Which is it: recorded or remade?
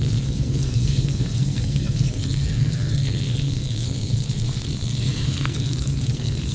remade